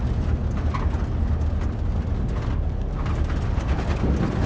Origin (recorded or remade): recorded